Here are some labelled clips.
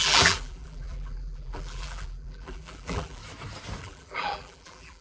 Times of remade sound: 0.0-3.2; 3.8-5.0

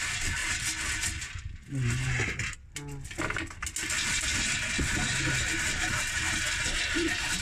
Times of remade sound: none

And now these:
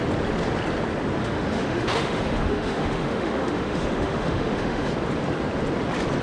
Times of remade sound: 1.2-4.9